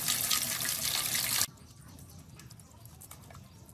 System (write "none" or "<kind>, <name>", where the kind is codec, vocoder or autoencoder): none